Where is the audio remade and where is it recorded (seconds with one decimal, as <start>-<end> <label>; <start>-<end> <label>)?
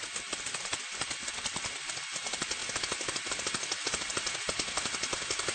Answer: 0.0-5.5 recorded